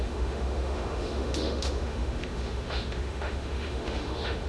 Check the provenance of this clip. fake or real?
fake